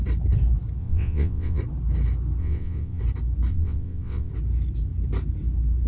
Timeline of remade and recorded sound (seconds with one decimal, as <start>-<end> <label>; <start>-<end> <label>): 0.0-0.8 recorded; 0.8-1.6 remade; 1.6-2.4 recorded; 2.4-3.0 remade; 3.0-3.5 recorded; 3.5-4.3 remade; 4.3-5.9 recorded